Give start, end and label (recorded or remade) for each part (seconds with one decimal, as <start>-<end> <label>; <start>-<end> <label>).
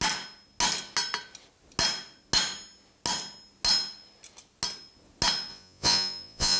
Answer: 0.0-5.5 recorded; 5.5-6.6 remade